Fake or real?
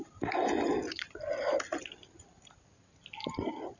real